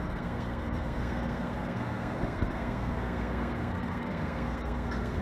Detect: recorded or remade remade